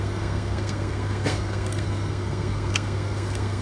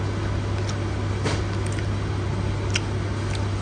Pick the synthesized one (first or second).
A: first